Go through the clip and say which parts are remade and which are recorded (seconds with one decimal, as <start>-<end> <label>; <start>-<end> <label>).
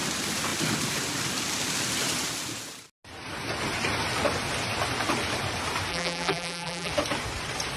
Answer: 0.0-5.9 recorded; 5.9-6.9 remade; 6.9-7.8 recorded